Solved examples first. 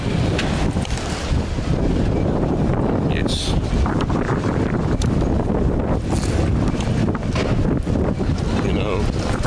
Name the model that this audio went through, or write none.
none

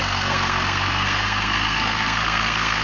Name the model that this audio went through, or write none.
codec, SNAC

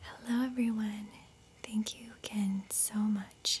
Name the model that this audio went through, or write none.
none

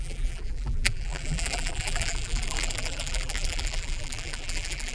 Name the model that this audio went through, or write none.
vocoder, BigVGAN v2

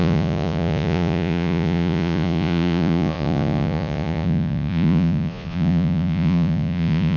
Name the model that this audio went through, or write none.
vocoder, Vocos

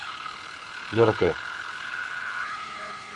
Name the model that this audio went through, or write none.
codec, HILCodec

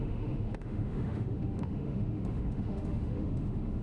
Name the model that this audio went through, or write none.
autoencoder, DAC-VAE